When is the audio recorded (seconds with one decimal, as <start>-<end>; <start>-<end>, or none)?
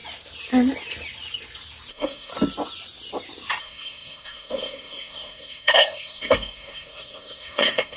0.0-1.9; 2.3-3.6